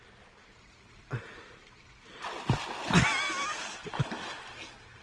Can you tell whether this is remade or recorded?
recorded